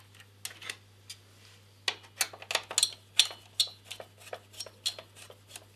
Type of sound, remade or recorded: recorded